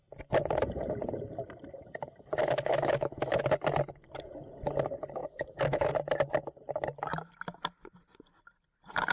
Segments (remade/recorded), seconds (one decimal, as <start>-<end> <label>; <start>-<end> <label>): 0.0-2.4 recorded; 2.4-3.4 remade; 3.4-5.2 recorded; 5.2-5.9 remade; 5.9-9.1 recorded